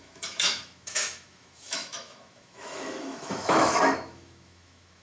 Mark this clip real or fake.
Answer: fake